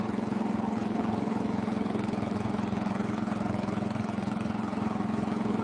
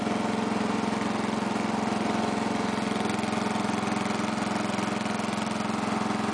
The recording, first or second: second